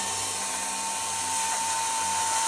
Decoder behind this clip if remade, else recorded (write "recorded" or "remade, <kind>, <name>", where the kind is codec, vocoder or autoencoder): recorded